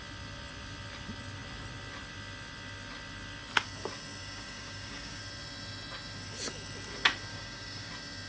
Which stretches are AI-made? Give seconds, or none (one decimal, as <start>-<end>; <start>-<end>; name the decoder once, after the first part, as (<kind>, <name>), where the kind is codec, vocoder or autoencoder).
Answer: 4.2-5.2 (codec, DAC); 7.3-7.9